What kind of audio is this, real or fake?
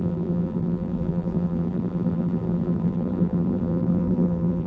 fake